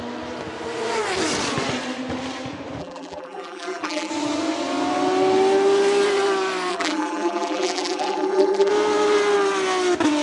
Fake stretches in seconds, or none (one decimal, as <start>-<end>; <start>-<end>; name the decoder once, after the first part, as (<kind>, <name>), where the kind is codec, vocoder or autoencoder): 2.8-4.1 (vocoder, BigVGAN v2); 6.7-8.7